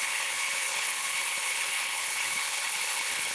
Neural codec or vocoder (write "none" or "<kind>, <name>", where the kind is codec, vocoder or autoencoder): codec, HILCodec